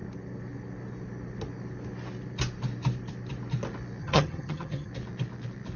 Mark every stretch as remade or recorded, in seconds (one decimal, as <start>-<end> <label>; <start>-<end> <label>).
0.0-4.0 recorded; 4.0-4.9 remade; 4.9-5.8 recorded